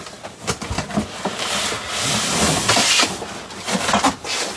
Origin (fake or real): real